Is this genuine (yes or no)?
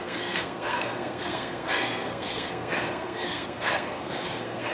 no